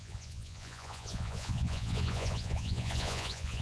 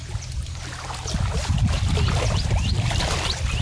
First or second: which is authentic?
second